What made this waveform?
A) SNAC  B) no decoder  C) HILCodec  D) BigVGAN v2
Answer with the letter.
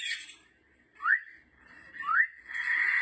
D